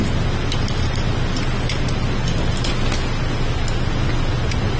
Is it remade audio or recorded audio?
recorded